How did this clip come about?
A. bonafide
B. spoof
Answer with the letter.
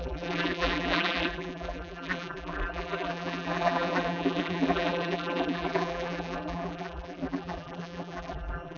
B